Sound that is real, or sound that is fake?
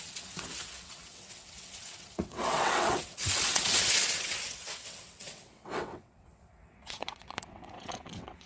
fake